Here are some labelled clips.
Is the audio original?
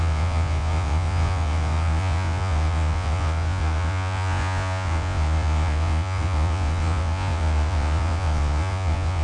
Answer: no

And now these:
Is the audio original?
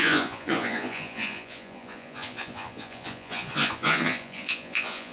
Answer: no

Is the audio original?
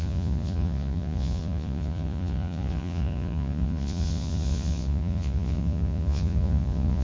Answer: no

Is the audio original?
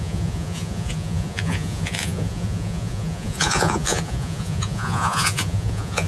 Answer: no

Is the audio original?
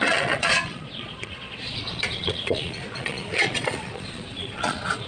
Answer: no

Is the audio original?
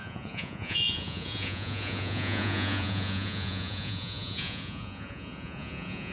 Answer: no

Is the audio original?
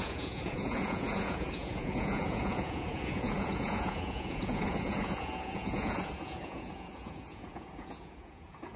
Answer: no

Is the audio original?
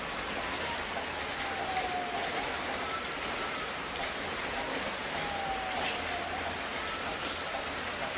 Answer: yes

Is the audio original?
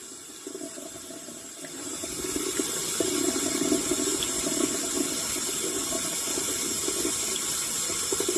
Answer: yes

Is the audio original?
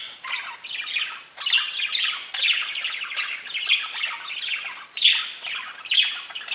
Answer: yes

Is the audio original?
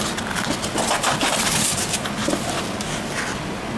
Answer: yes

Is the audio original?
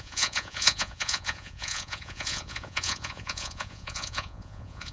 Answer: no